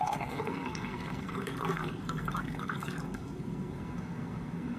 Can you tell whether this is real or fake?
fake